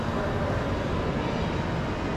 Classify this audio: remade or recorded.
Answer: recorded